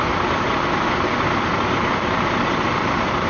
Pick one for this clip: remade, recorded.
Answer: remade